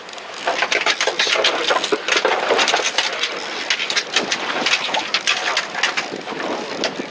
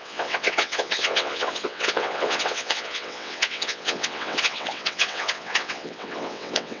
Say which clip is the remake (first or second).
second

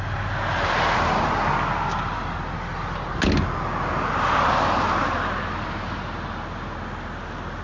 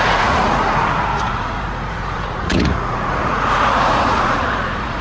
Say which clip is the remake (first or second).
second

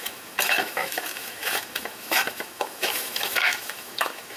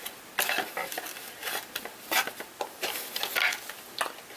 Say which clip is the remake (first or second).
first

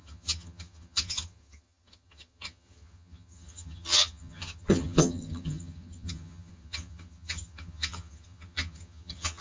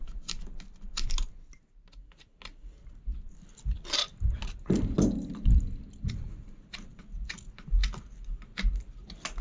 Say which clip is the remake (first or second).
first